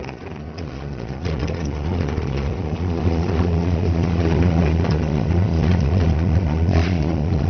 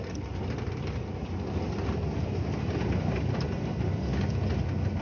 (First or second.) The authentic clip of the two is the second